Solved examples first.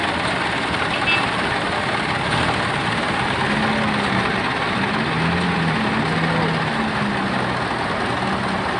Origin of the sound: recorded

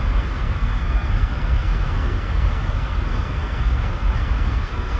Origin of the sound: remade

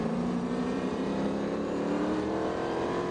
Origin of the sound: remade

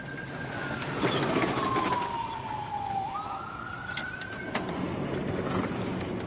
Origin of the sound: recorded